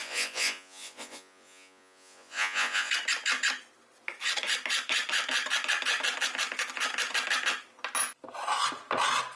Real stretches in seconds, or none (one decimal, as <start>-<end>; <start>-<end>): 2.9-9.4